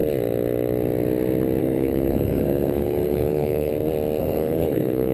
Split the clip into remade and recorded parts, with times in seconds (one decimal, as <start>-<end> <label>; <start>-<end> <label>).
0.0-1.6 recorded; 1.6-3.7 remade; 3.7-4.2 recorded; 4.2-5.1 remade